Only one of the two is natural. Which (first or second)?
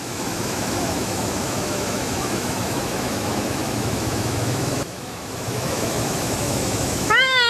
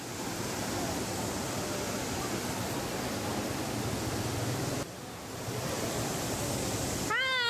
second